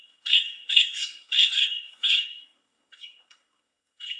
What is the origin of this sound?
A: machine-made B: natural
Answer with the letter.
A